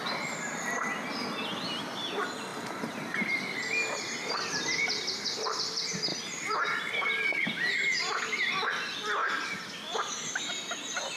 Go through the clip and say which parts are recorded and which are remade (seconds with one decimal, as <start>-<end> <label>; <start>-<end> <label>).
0.0-2.5 recorded; 2.5-5.6 remade; 5.6-6.1 recorded; 6.1-8.0 remade; 8.0-9.2 recorded; 9.2-10.5 remade; 10.5-11.2 recorded